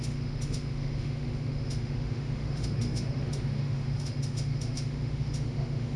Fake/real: fake